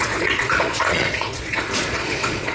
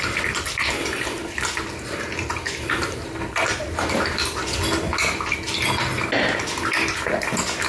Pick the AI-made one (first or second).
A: first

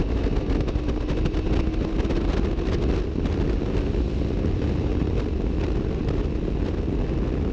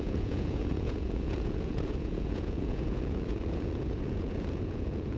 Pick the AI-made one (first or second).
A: second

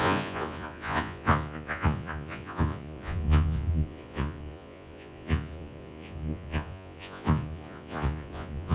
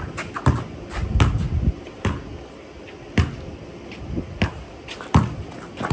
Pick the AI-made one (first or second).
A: first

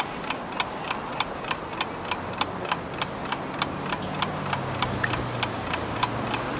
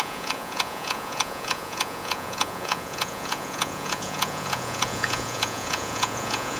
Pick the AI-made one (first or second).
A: second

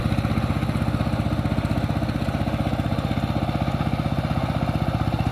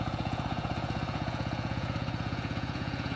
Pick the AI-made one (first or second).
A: second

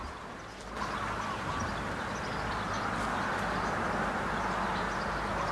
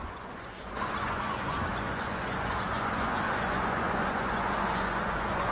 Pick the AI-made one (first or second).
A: second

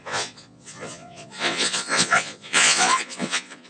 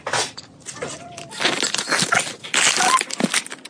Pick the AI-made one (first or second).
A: first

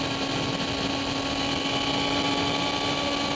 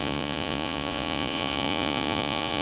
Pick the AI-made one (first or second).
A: second